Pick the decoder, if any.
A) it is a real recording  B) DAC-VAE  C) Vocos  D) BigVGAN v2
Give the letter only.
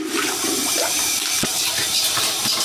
D